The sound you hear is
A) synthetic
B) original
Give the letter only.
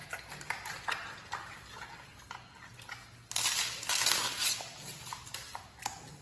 B